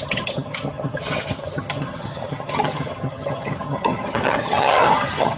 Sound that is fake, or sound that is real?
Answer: fake